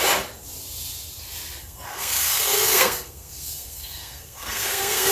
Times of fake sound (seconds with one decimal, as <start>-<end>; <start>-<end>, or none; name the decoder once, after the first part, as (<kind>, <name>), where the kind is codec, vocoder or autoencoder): 1.6-5.1 (codec, SNAC)